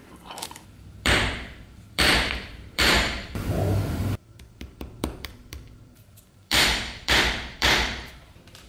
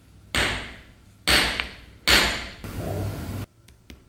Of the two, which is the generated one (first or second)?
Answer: first